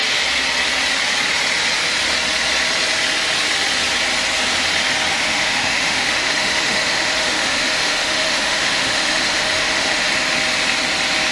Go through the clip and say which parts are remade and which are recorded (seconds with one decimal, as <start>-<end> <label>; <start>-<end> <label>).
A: 0.0-5.1 recorded; 5.1-10.1 remade; 10.1-11.3 recorded